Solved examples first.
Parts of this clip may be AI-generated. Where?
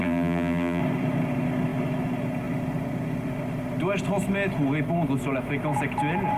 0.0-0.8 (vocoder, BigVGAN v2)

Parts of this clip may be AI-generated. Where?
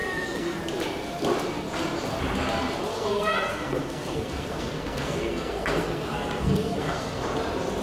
0.0-0.6 (codec, SNAC); 2.9-7.2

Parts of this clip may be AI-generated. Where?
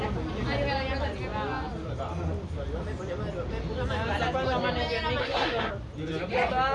5.2-5.7 (codec, SNAC)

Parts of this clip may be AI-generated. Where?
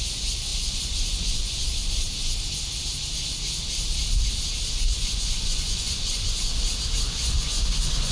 0.0-1.8 (vocoder, Vocos); 4.7-6.5; 7.0-8.1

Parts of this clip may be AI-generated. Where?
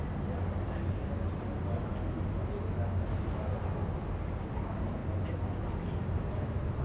none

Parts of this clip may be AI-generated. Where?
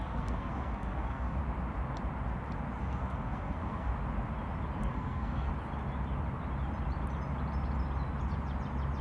0.0-1.4 (codec, SNAC); 2.8-3.9; 4.8-5.5